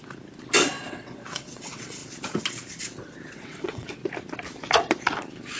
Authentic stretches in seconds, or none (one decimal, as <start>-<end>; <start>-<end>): 0.0-0.8; 2.0-3.3; 4.0-5.6